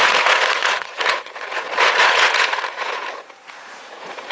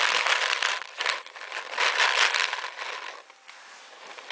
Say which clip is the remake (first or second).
first